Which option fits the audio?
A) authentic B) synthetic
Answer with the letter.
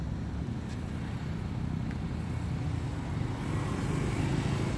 A